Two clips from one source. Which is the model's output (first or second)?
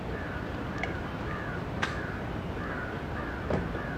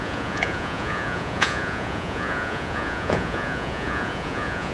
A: second